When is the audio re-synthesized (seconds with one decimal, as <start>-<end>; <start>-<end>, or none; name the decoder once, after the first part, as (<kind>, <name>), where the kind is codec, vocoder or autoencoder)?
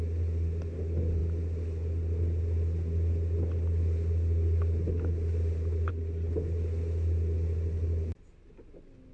none